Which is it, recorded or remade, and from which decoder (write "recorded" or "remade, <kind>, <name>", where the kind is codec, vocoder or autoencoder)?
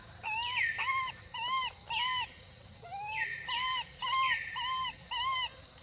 recorded